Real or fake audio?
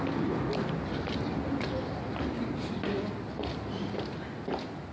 real